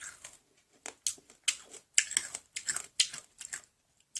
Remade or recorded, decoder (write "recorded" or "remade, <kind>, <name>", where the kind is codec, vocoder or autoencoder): recorded